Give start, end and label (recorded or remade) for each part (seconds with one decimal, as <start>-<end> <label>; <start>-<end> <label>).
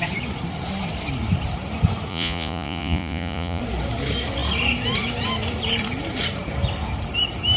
0.0-2.1 recorded; 2.1-3.6 remade; 3.6-7.6 recorded